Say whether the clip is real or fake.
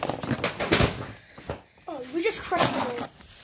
real